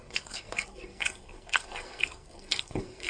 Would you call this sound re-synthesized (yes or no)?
yes